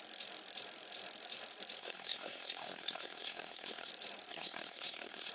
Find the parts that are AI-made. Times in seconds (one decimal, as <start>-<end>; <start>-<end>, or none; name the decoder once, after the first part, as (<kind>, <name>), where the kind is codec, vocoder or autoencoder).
1.8-3.9 (codec, SNAC); 4.3-5.3

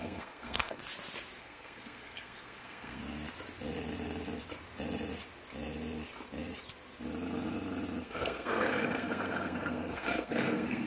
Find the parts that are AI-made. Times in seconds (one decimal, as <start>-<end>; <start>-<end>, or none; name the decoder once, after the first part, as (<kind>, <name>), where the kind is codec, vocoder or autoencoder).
0.0-0.8 (codec, SNAC); 1.4-3.0; 8.0-10.9

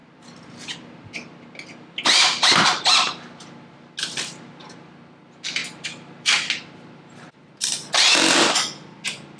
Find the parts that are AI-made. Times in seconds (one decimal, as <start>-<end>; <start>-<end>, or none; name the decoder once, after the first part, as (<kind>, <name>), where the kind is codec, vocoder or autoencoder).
none

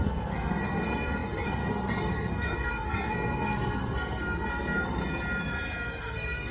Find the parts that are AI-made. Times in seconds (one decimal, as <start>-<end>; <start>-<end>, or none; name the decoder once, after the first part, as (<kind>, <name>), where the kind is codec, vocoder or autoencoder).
0.0-5.0 (codec, SNAC); 6.0-6.5

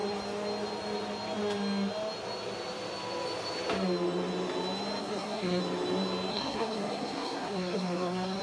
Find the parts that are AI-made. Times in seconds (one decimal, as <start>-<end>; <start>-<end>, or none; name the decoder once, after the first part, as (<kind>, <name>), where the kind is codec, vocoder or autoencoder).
5.0-5.6 (codec, SNAC); 6.3-8.4

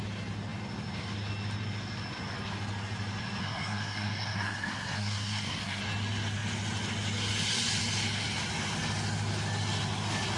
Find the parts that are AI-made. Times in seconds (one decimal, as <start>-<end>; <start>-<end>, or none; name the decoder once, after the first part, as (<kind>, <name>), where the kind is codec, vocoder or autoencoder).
3.4-5.8 (codec, SNAC)